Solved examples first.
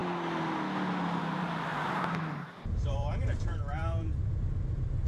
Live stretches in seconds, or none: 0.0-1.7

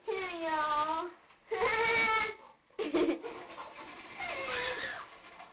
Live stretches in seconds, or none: 0.0-3.6; 4.6-5.5

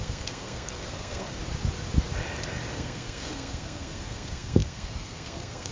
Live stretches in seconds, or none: 1.4-2.7

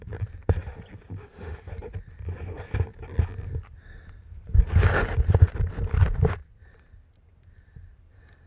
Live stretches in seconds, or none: 0.0-1.2; 1.7-8.5

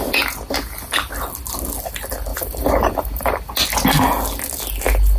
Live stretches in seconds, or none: 0.0-2.3; 3.5-5.2

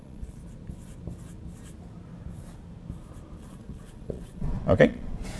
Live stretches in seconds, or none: 0.4-3.4

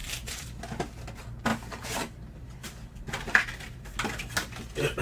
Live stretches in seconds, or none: 0.6-1.5; 4.5-5.0